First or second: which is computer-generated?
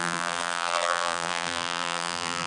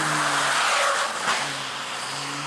first